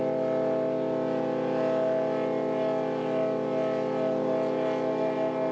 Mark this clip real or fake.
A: real